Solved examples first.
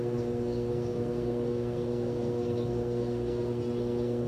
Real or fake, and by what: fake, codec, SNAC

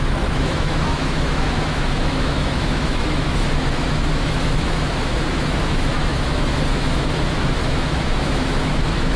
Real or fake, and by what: fake, autoencoder, DAC-VAE